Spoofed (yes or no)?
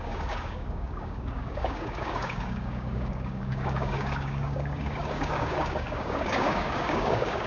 yes